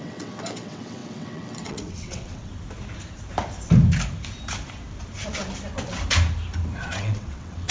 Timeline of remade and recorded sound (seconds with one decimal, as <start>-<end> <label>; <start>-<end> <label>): 0.0-2.5 remade; 2.5-6.8 recorded; 6.8-7.7 remade